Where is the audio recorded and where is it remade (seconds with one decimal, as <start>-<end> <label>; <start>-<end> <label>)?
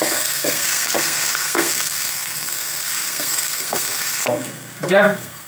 0.0-5.5 remade